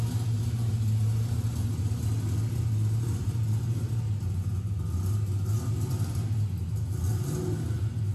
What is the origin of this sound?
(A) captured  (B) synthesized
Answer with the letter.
A